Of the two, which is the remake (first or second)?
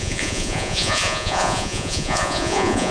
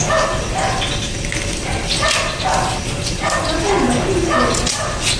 first